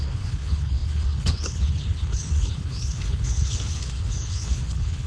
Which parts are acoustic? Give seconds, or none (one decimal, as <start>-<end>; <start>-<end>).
none